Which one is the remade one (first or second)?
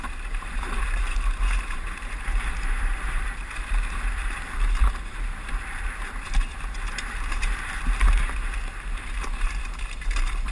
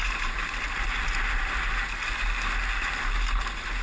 first